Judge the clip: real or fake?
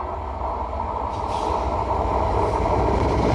real